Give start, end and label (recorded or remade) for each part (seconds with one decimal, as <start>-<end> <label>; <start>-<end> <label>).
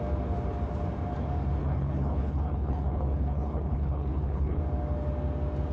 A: 0.0-1.6 recorded; 1.6-4.6 remade; 4.6-5.7 recorded